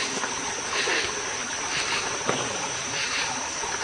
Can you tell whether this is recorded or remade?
recorded